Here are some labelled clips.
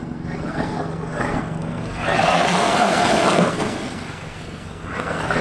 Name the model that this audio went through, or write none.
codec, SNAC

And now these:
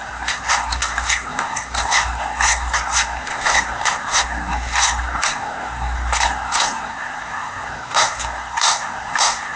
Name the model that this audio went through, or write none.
codec, SNAC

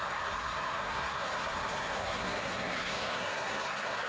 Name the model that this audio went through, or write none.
codec, SNAC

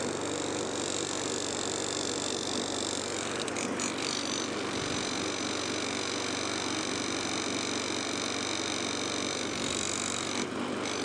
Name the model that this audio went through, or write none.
none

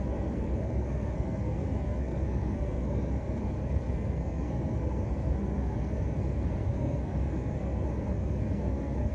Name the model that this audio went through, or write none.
codec, SNAC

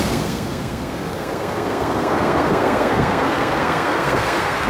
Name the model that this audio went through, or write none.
codec, SNAC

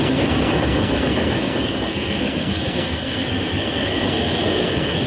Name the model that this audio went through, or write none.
codec, SNAC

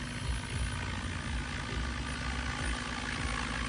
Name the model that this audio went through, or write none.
none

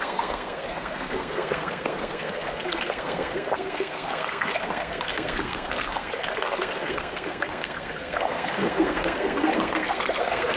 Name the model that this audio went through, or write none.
codec, SNAC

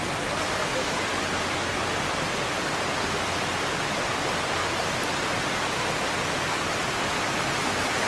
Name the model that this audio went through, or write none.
none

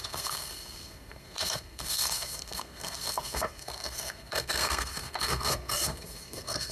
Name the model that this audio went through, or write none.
codec, SNAC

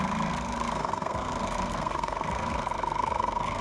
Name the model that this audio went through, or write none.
codec, SNAC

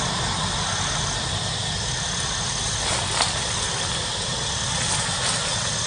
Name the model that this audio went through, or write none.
none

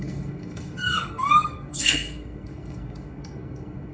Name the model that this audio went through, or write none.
codec, SNAC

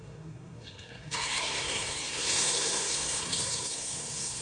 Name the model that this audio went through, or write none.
codec, SNAC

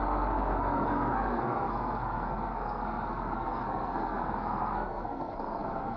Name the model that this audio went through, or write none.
codec, SNAC